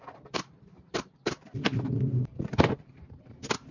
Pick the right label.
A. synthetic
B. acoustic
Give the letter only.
A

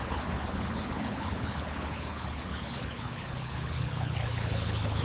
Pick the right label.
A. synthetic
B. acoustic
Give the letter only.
A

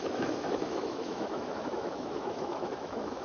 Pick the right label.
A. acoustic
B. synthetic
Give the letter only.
B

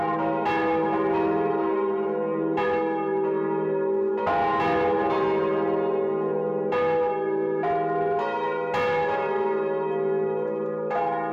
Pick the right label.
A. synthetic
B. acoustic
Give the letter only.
B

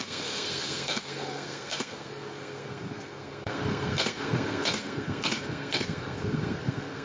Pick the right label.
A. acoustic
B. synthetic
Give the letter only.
B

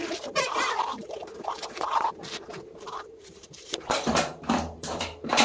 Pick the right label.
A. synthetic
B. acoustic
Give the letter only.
A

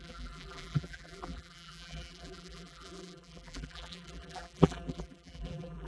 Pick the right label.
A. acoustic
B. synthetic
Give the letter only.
B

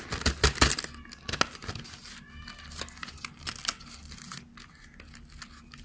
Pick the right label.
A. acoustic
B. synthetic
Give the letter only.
A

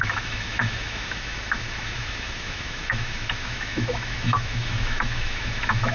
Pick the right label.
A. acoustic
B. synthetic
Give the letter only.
B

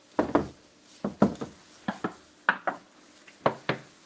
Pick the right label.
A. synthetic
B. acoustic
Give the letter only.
B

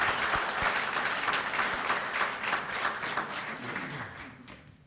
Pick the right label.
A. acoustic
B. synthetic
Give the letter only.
A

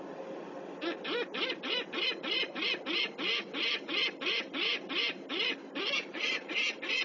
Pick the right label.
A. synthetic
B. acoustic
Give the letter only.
B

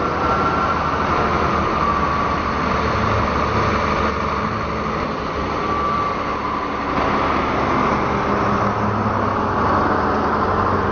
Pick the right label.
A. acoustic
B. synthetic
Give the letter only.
A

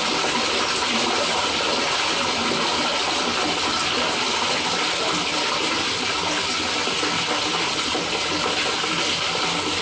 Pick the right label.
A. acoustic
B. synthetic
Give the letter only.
A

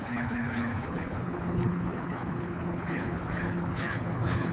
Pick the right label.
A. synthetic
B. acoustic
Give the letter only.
A